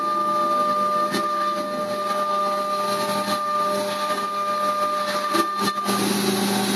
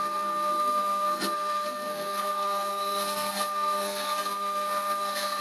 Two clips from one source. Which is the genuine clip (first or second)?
first